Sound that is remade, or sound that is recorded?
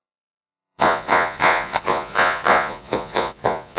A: remade